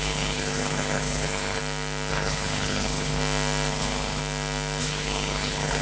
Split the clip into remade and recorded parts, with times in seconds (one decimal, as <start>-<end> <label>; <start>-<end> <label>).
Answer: 0.0-1.6 remade; 1.6-2.1 recorded; 2.1-3.2 remade; 3.2-3.7 recorded; 3.7-4.2 remade; 4.2-4.8 recorded; 4.8-5.8 remade